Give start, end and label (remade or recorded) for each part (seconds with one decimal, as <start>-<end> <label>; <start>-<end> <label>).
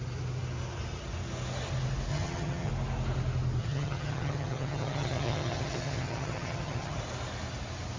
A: 0.0-2.1 recorded; 2.1-2.7 remade; 2.7-3.6 recorded; 3.6-7.0 remade; 7.0-8.0 recorded